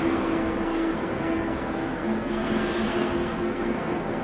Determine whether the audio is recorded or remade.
remade